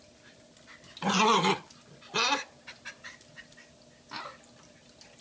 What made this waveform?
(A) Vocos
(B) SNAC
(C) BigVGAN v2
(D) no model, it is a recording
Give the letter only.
D